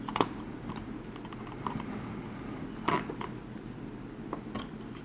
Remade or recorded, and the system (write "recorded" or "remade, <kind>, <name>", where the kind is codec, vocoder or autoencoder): recorded